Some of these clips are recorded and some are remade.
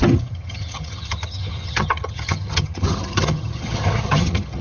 remade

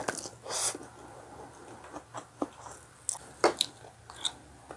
recorded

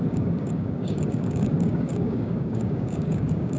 remade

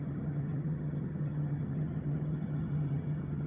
remade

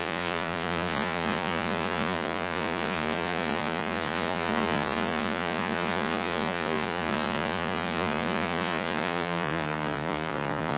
remade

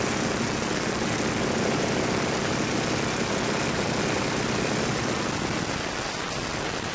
recorded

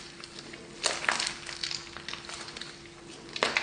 recorded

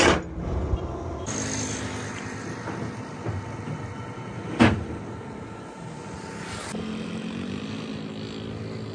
recorded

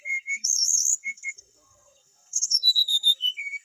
remade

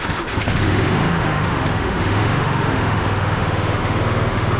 remade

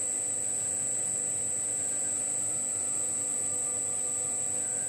recorded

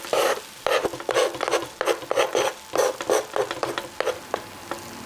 recorded